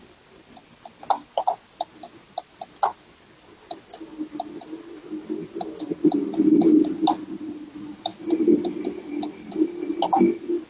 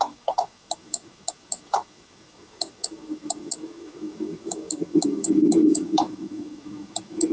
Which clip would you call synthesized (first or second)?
second